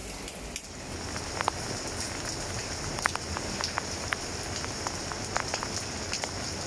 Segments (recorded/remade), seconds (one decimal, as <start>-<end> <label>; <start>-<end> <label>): 0.0-6.7 recorded